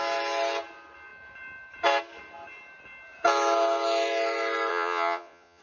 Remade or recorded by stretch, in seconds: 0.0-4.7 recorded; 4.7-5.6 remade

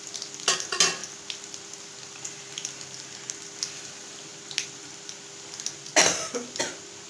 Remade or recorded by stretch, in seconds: 0.0-7.1 recorded

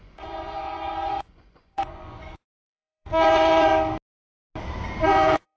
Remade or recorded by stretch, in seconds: 0.0-3.7 remade; 3.7-5.0 recorded; 5.0-5.6 remade

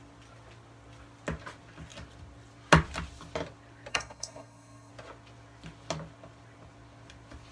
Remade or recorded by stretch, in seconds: 0.0-3.9 recorded; 3.9-4.9 remade; 4.9-7.5 recorded

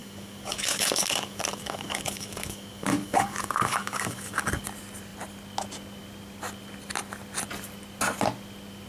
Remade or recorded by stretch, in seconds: 0.0-4.6 remade; 4.6-8.9 recorded

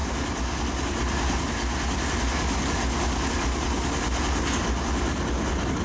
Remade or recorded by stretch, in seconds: 0.0-5.8 recorded

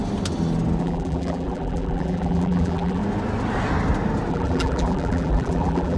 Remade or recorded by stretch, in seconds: 0.0-0.8 recorded; 0.8-3.0 remade; 3.0-4.3 recorded; 4.3-6.0 remade